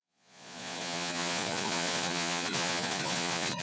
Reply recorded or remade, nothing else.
remade